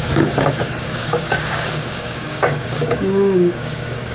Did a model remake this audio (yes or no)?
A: yes